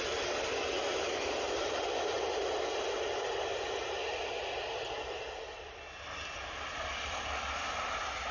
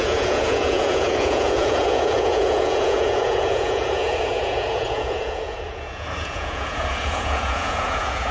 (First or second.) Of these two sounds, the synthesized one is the second